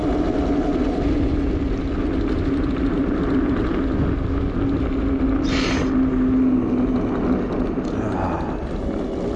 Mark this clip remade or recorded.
recorded